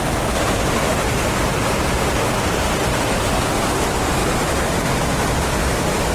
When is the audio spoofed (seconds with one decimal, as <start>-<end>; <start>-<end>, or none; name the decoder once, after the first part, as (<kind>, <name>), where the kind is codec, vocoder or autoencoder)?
none